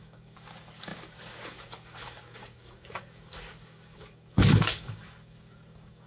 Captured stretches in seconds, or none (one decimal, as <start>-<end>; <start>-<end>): none